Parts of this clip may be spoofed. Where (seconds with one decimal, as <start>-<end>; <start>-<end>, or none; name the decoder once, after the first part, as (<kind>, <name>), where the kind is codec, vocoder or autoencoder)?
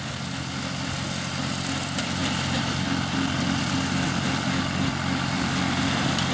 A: none